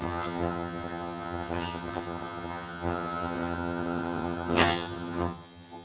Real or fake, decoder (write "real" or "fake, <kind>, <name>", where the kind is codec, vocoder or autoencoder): fake, vocoder, HiFi-GAN